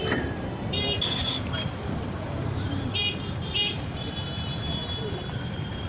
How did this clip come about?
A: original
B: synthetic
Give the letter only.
B